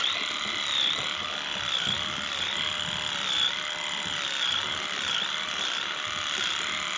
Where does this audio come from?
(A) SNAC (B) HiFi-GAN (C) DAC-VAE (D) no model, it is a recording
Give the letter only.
D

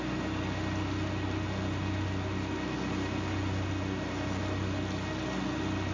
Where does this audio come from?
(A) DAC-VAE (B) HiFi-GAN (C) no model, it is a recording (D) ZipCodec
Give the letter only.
C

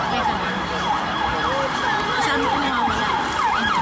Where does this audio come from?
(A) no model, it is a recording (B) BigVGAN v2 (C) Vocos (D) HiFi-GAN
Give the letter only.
A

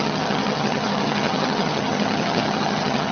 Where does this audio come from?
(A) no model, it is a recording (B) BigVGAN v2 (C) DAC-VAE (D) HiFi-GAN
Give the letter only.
D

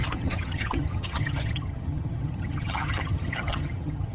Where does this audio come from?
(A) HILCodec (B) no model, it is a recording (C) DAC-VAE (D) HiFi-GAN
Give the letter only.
D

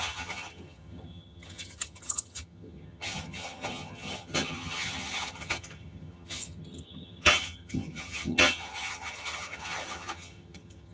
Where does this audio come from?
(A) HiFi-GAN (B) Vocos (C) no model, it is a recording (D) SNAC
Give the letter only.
A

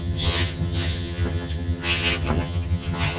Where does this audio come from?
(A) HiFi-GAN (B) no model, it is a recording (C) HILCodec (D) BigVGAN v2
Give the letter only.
A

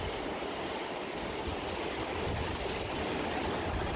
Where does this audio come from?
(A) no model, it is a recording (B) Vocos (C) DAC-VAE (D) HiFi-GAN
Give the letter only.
A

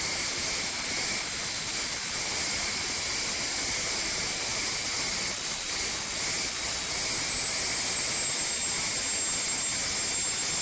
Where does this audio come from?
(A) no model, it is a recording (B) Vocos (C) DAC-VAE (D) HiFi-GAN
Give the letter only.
A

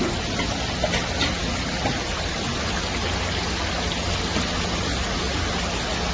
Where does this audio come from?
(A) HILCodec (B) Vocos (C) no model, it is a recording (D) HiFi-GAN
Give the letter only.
C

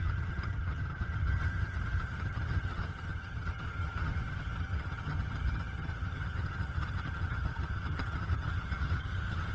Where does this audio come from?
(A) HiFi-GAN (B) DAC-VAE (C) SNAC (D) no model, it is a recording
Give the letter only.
A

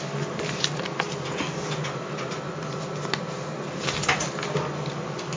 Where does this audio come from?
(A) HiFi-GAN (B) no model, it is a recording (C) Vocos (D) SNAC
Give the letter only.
B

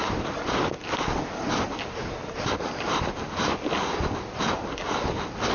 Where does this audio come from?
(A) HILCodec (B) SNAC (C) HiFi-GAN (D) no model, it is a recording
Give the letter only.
D